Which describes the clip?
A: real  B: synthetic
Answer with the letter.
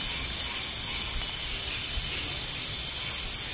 A